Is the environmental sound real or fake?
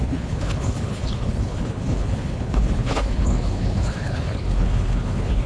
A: fake